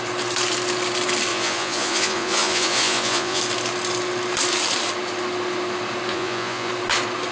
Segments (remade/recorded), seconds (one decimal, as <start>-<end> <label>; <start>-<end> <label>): 0.0-1.3 recorded; 1.3-3.4 remade; 3.4-6.1 recorded; 6.1-6.7 remade; 6.7-7.3 recorded